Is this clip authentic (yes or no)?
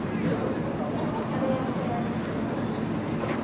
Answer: yes